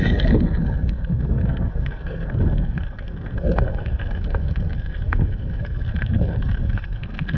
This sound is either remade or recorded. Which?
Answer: remade